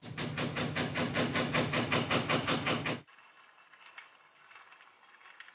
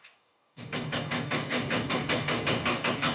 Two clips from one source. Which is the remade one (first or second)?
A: second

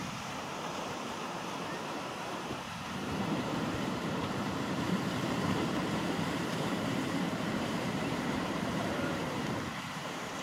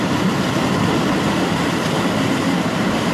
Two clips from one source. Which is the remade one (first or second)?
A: first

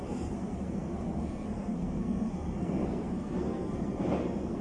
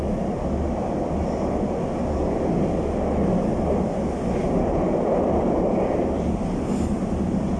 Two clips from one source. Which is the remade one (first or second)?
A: first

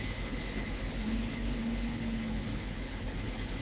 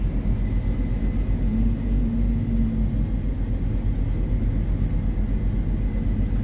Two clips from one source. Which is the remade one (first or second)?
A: first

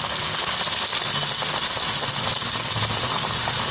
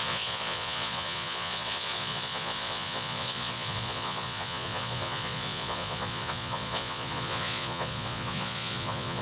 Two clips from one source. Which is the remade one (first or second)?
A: second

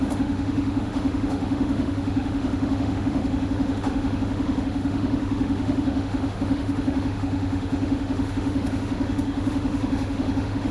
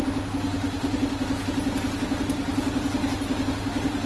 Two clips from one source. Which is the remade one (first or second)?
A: first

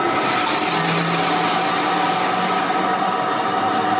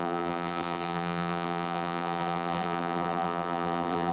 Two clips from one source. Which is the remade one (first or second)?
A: second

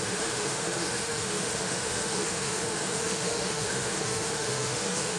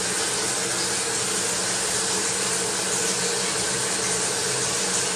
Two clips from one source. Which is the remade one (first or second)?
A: first